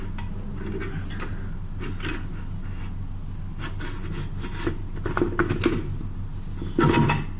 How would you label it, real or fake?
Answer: real